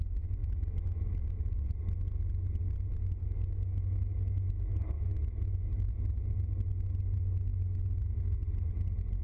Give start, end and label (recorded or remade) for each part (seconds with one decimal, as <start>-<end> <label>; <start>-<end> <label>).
0.0-0.4 recorded; 0.4-1.6 remade; 1.6-3.2 recorded; 3.2-5.9 remade; 5.9-9.2 recorded